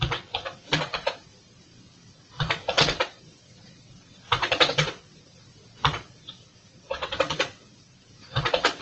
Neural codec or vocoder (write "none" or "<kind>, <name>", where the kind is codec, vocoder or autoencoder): vocoder, WaveNeXt